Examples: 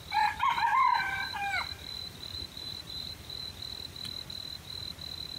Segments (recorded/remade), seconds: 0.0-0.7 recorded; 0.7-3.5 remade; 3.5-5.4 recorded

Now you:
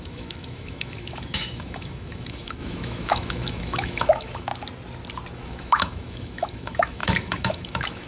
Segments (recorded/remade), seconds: 0.0-4.5 remade; 4.5-5.3 recorded; 5.3-8.1 remade